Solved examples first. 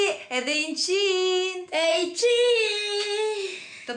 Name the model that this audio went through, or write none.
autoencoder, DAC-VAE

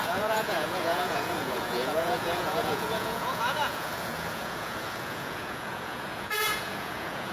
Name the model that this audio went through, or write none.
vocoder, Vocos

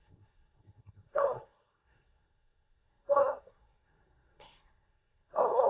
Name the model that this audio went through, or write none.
codec, SNAC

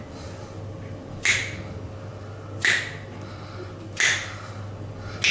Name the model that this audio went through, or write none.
none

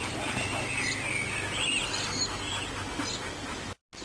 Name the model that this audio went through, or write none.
none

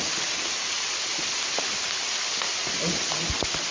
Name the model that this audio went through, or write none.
none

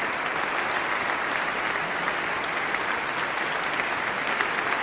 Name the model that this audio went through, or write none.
none